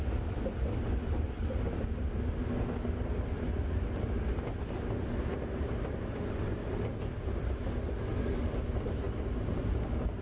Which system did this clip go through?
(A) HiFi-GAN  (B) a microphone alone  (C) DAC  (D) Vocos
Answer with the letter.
B